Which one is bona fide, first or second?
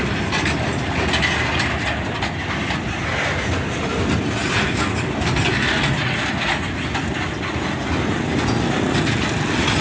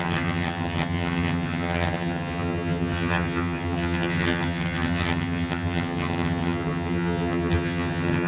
first